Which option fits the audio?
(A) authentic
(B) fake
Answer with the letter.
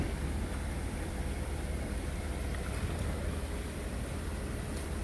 B